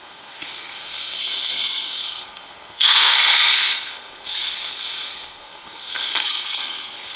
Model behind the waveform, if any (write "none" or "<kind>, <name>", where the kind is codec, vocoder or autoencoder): codec, SNAC